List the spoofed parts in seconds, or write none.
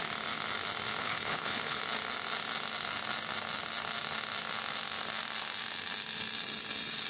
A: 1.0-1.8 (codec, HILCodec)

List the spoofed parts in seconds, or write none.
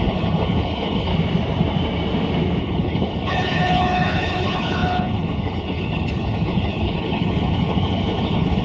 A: 0.0-1.1 (codec, HILCodec); 2.6-8.6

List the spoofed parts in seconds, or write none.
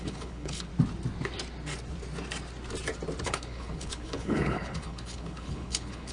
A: 0.0-0.7 (codec, HILCodec); 3.2-6.1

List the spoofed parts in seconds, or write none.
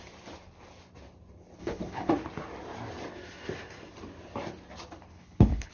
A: 1.6-2.1 (codec, HILCodec); 5.1-5.7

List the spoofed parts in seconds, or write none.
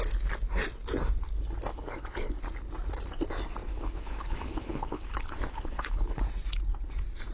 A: 1.7-2.4 (codec, HILCodec); 3.7-6.2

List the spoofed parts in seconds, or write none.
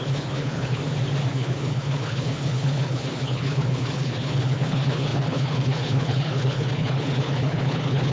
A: 0.0-0.8 (codec, HILCodec); 1.3-8.1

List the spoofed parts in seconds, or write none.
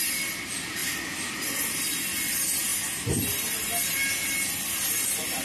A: none